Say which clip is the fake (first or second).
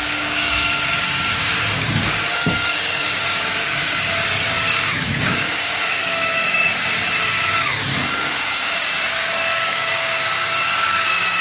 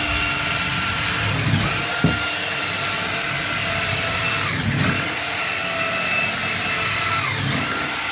first